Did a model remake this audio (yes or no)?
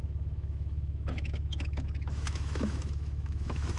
yes